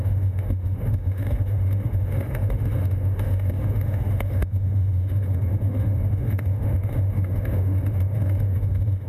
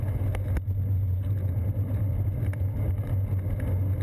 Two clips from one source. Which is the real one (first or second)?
second